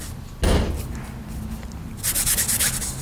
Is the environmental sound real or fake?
fake